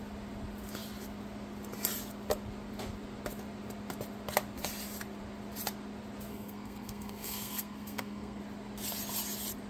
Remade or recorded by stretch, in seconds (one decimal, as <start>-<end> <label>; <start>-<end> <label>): 0.0-6.3 recorded; 6.3-8.4 remade; 8.4-9.7 recorded

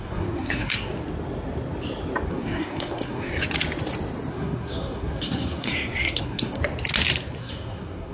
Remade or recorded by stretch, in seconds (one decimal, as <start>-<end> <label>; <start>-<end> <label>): 0.0-0.9 remade; 0.9-2.3 recorded; 2.3-3.3 remade; 3.3-4.3 recorded; 4.3-6.6 remade; 6.6-7.4 recorded; 7.4-8.1 remade

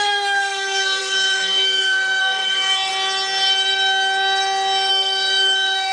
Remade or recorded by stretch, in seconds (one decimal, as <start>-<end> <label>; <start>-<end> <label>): 0.0-2.9 remade; 2.9-4.9 recorded; 4.9-5.9 remade

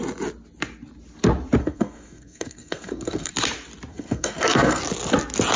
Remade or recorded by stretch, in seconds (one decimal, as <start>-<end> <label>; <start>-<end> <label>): 0.0-1.6 recorded; 1.6-3.3 remade; 3.3-3.9 recorded; 3.9-4.8 remade; 4.8-5.6 recorded

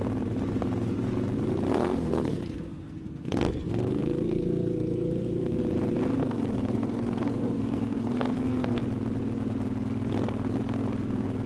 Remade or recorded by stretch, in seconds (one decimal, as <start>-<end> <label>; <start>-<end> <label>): 0.0-1.7 recorded; 1.7-5.6 remade; 5.6-6.2 recorded; 6.2-8.8 remade; 8.8-11.5 recorded

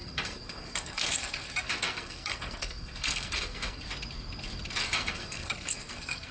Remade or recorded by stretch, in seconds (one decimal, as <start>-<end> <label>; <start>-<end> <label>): 0.0-3.8 remade; 3.8-4.8 recorded; 4.8-6.3 remade

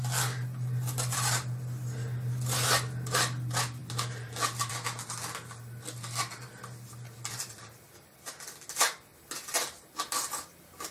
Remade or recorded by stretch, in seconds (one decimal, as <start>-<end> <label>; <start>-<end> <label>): 0.0-10.9 recorded

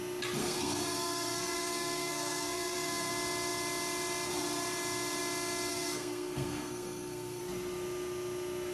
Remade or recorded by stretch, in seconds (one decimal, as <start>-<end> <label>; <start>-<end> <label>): 0.0-0.4 recorded; 0.4-3.1 remade; 3.1-5.7 recorded; 5.7-7.4 remade; 7.4-8.7 recorded